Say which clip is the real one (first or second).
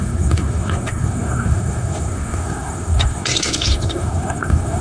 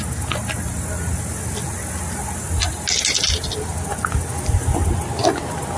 second